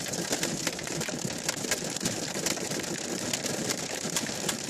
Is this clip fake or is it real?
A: fake